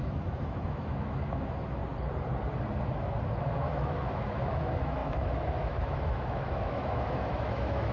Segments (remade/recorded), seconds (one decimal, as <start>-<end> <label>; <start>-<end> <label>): 0.0-1.8 remade; 1.8-3.3 recorded; 3.3-7.9 remade